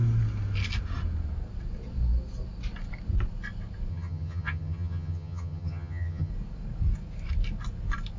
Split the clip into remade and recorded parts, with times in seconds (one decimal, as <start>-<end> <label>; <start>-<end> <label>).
0.0-3.9 recorded; 3.9-6.3 remade; 6.3-8.2 recorded